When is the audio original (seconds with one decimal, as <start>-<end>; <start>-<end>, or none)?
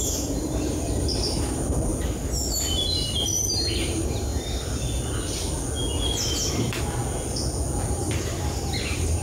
1.9-3.5; 4.3-6.5; 7.0-7.9